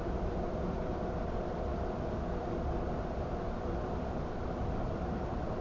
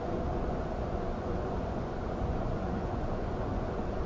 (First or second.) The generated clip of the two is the second